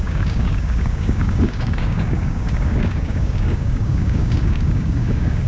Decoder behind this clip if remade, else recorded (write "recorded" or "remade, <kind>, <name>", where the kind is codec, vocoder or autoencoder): remade, codec, DAC